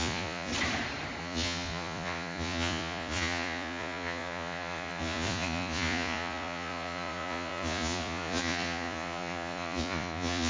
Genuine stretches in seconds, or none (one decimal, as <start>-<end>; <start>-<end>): 0.5-1.2